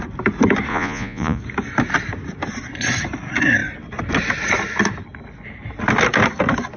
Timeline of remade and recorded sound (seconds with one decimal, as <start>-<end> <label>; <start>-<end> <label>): 0.0-0.7 recorded; 0.7-1.4 remade; 1.4-6.8 recorded